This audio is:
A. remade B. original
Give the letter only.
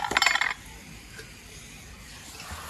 B